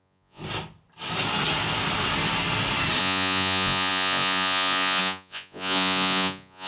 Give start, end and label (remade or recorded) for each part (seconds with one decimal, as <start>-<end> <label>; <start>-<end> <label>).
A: 0.0-0.4 remade; 0.4-3.0 recorded; 3.0-6.7 remade